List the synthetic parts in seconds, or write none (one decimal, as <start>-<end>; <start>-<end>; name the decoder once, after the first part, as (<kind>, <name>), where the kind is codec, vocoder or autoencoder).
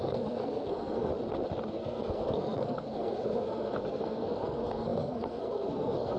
0.0-1.1 (codec, SNAC); 1.7-6.2